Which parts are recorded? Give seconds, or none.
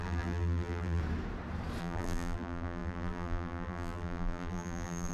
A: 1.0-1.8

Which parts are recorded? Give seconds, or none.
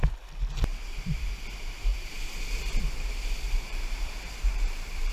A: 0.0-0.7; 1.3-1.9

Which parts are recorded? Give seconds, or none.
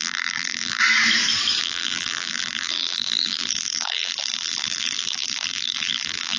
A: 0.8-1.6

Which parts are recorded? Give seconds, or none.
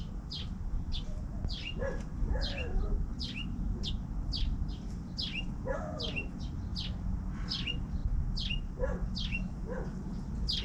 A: 0.0-10.6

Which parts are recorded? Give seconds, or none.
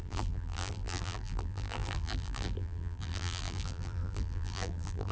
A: none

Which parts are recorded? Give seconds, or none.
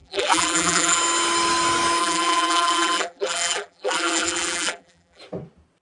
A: 1.0-2.0; 5.2-5.8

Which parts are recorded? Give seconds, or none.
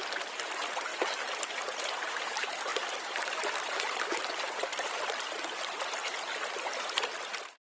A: 6.0-6.6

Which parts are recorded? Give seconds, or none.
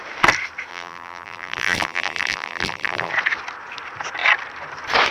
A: 0.0-0.7; 3.1-5.1